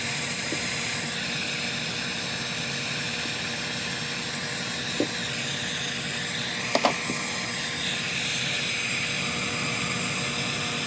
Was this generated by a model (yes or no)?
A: no